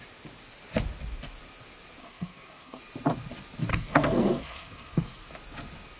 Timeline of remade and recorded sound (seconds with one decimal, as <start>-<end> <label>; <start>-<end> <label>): 0.0-2.0 recorded; 2.0-2.8 remade; 2.8-3.7 recorded; 3.7-5.3 remade; 5.3-6.0 recorded